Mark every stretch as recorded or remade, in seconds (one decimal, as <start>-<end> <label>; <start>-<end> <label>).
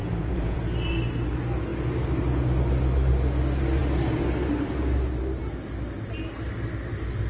0.0-0.6 remade; 0.6-7.3 recorded